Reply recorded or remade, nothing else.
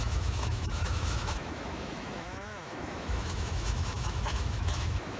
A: remade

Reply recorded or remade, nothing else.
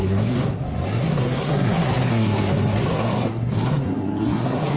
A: remade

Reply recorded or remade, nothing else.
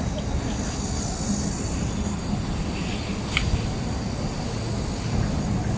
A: recorded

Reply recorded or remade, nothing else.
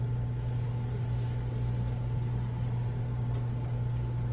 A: recorded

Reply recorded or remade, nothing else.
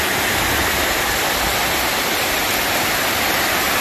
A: recorded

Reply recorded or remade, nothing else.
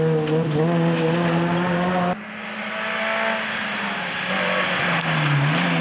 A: recorded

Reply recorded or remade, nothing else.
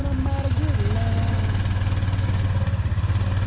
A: recorded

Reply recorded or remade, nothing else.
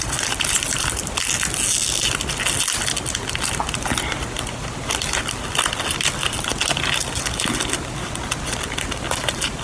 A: recorded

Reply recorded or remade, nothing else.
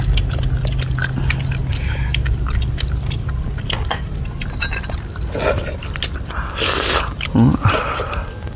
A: recorded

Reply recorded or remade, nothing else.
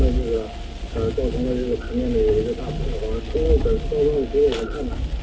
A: recorded